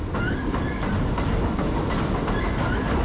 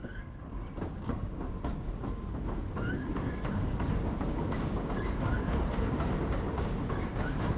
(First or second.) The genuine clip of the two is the first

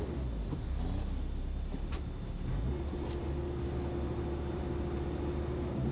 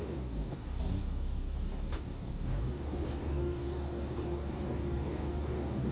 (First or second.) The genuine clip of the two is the first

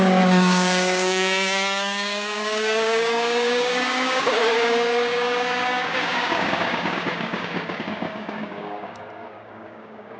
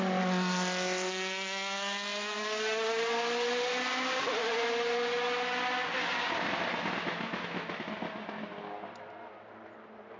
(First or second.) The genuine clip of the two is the second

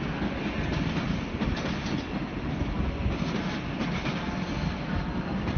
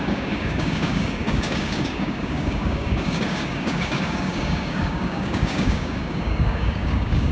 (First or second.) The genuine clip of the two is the first